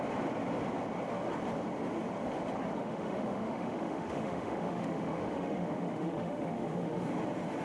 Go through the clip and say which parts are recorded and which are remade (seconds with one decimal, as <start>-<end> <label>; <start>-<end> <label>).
0.0-2.8 recorded; 2.8-7.1 remade; 7.1-7.6 recorded